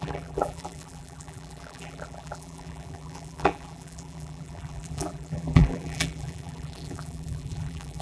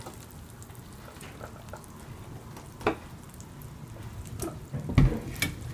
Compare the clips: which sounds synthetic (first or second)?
first